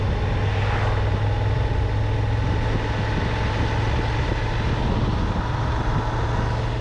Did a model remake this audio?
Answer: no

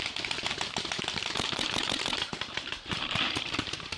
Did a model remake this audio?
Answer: yes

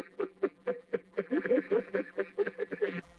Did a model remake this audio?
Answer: yes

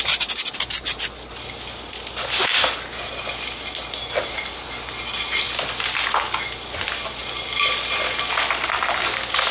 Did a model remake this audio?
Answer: no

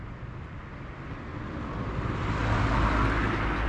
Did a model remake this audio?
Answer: no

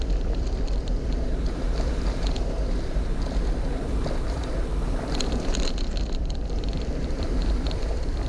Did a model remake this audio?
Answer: yes